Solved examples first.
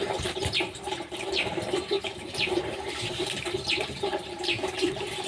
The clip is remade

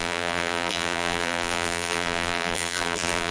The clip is remade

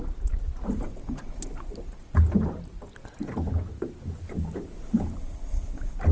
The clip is recorded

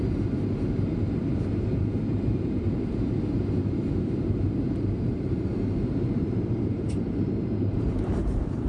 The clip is remade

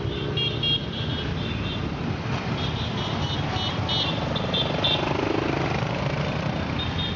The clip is remade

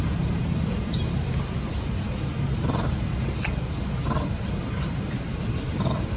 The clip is remade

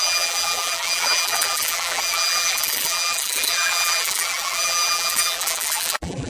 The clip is remade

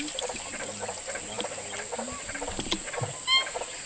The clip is recorded